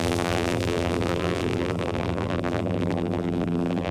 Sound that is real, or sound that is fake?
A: fake